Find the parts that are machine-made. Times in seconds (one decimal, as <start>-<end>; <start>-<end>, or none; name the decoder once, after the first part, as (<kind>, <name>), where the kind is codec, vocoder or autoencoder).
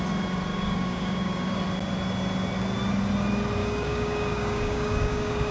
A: 0.5-1.6 (codec, DAC); 3.6-5.5